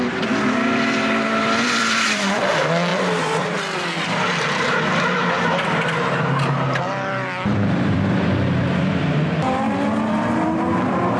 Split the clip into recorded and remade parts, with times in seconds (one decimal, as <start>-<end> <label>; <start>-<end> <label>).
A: 0.0-5.2 remade; 5.2-6.1 recorded; 6.1-11.2 remade